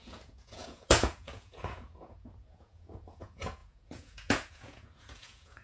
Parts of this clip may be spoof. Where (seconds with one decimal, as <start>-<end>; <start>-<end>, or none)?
0.0-5.6